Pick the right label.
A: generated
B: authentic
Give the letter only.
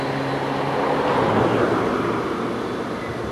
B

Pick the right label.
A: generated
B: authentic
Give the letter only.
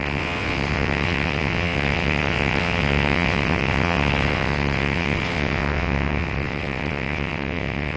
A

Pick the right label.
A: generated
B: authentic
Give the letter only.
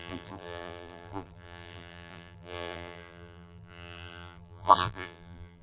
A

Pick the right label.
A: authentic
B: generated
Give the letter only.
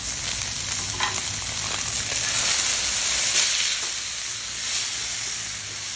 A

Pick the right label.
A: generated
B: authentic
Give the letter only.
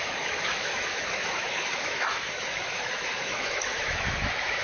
A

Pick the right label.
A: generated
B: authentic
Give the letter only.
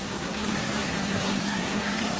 A